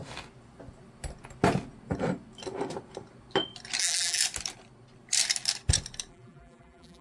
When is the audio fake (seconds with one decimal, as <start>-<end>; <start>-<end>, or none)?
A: 3.8-4.2; 6.1-7.0